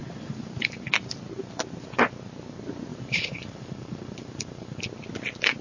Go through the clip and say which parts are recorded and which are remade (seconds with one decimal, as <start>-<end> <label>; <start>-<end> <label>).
0.0-0.9 remade; 0.9-2.9 recorded; 2.9-4.8 remade; 4.8-5.6 recorded